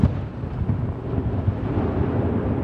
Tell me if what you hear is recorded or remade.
recorded